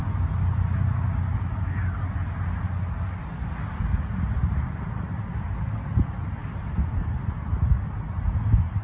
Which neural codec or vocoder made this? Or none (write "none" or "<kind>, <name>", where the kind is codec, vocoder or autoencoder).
none